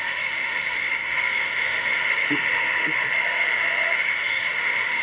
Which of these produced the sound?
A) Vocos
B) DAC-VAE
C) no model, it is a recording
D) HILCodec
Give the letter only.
B